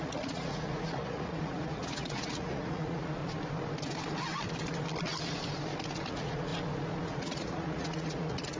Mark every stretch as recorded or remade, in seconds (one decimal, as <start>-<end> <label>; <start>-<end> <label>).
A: 0.0-3.2 remade; 3.2-6.1 recorded; 6.1-6.5 remade; 6.5-7.1 recorded; 7.1-8.6 remade